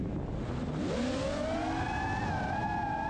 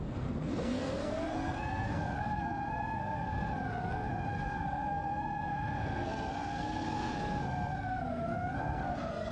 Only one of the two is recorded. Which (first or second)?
first